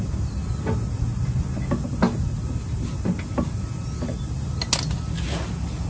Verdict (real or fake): real